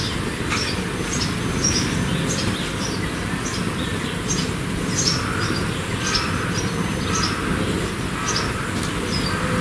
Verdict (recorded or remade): recorded